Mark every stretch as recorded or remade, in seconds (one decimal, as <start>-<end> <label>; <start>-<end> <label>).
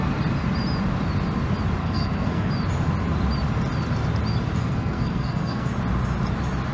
0.0-1.8 recorded; 1.8-2.5 remade; 2.5-4.6 recorded; 4.6-5.7 remade; 5.7-6.7 recorded